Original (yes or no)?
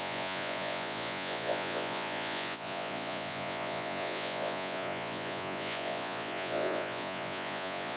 no